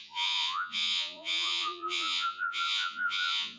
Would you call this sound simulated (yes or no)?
yes